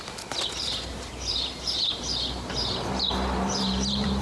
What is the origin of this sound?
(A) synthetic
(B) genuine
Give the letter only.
A